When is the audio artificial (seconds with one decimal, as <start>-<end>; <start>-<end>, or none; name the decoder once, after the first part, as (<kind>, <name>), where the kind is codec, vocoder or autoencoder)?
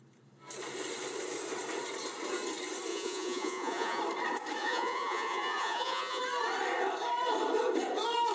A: 2.9-4.0 (vocoder, Vocos); 4.6-6.2